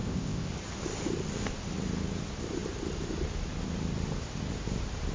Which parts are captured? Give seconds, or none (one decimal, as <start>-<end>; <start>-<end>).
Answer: 0.5-5.1